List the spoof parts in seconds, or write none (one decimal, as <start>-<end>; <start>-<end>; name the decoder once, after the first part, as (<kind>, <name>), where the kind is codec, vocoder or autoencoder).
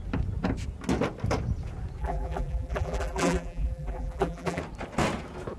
2.0-4.6 (vocoder, BigVGAN v2)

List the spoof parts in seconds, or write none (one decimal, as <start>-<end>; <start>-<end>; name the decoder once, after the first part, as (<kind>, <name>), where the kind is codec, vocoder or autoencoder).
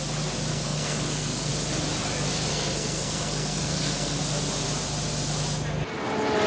0.5-1.5 (codec, SNAC); 2.5-4.2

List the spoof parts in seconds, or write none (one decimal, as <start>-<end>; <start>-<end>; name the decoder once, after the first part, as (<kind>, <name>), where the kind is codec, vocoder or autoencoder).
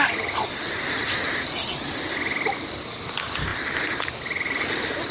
none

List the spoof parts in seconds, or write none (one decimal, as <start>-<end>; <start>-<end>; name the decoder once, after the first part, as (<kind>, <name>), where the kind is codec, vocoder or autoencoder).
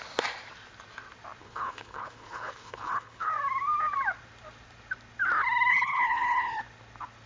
1.4-3.3 (codec, HILCodec); 5.7-6.6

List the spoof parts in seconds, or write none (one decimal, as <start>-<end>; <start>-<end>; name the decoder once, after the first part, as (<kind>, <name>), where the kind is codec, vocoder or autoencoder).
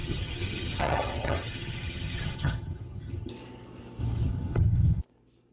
0.0-3.3 (vocoder, HiFi-GAN); 4.0-5.0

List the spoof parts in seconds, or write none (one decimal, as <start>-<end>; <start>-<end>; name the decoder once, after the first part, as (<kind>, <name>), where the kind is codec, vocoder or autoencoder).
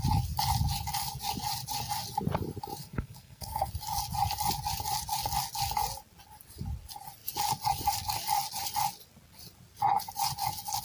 2.8-3.7 (codec, SNAC)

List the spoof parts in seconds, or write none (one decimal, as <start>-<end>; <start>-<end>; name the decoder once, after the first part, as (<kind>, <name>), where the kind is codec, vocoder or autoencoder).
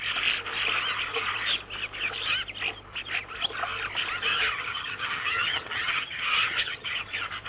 4.3-7.0 (vocoder, HiFi-GAN)